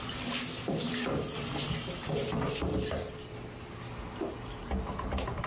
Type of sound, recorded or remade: recorded